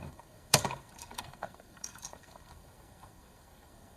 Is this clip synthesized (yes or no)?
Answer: yes